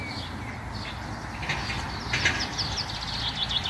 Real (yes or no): yes